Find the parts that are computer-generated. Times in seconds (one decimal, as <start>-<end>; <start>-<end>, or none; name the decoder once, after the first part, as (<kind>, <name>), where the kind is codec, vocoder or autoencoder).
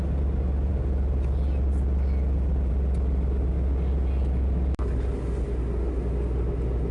none